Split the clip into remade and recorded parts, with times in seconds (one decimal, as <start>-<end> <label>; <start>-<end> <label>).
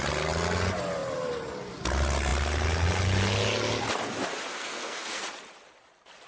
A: 0.0-4.5 recorded; 4.5-5.2 remade; 5.2-6.3 recorded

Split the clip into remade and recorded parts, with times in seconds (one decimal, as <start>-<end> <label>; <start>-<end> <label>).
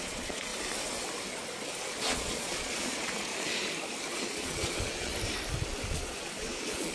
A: 0.0-0.5 remade; 0.5-2.0 recorded; 2.0-3.3 remade; 3.3-4.1 recorded; 4.1-5.1 remade; 5.1-5.9 recorded; 5.9-6.9 remade